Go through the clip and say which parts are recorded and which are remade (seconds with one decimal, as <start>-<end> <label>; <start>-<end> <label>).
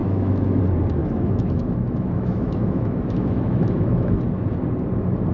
0.0-0.6 remade; 0.6-1.0 recorded; 1.0-4.2 remade; 4.2-5.3 recorded